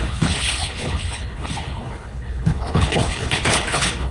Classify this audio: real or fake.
fake